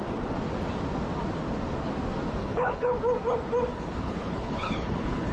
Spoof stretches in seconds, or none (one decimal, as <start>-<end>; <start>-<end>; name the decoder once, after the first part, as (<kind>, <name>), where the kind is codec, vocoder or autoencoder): 2.4-3.0 (codec, HILCodec); 3.7-5.3